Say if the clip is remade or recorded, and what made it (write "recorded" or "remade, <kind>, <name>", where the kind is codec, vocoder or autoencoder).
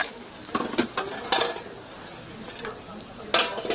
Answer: recorded